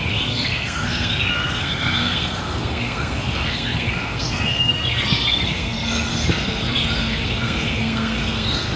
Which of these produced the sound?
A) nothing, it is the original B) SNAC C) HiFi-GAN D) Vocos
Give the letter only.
B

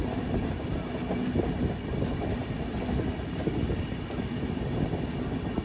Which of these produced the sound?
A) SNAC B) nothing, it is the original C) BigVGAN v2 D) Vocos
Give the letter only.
B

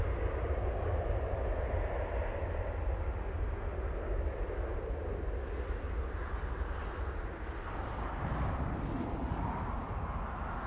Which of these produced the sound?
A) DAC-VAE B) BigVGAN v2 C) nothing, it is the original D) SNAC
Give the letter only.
C